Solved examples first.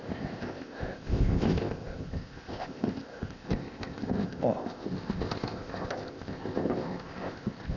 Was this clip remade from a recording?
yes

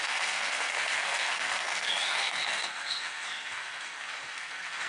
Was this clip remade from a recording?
yes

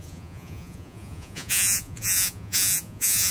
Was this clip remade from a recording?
yes